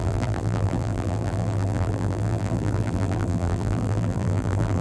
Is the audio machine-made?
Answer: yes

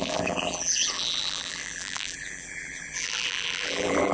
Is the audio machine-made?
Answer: yes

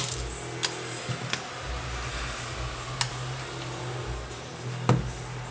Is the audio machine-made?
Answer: no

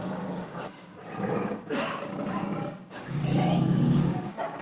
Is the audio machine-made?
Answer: yes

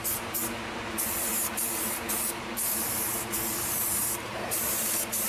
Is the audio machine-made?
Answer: yes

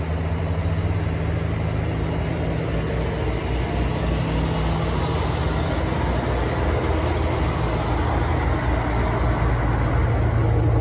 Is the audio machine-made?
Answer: no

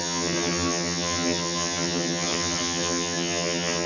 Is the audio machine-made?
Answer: yes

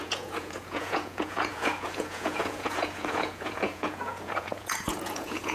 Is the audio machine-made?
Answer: yes